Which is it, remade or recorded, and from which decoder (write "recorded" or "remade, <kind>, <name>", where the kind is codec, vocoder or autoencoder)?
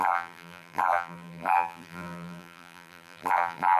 remade, vocoder, BigVGAN v2